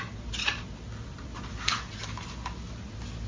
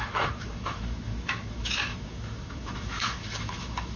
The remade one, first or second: second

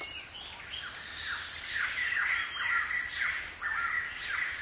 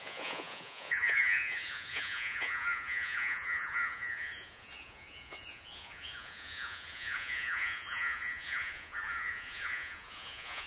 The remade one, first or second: second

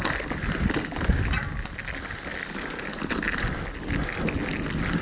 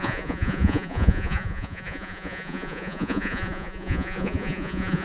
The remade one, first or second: second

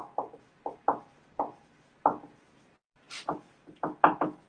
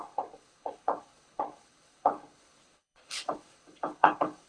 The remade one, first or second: second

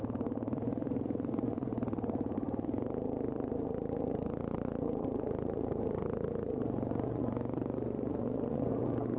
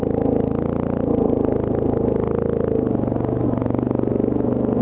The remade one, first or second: first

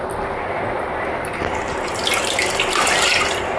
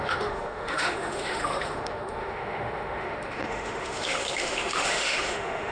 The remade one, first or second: second